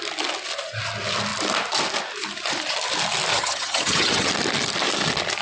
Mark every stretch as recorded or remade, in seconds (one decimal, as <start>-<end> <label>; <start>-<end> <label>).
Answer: 0.0-3.3 recorded; 3.3-4.3 remade; 4.3-5.4 recorded